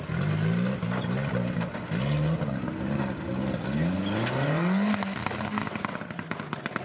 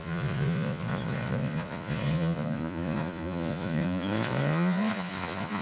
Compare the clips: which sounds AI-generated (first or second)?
second